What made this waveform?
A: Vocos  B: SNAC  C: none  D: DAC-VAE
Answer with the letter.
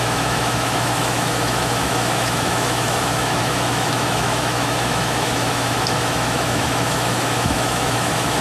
D